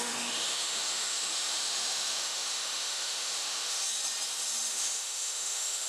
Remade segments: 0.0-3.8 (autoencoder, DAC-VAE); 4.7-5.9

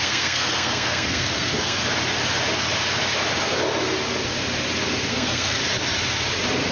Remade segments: 0.0-1.8 (codec, SNAC); 5.1-5.6

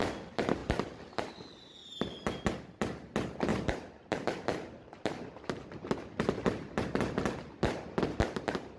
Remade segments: 3.5-5.8 (vocoder, BigVGAN v2)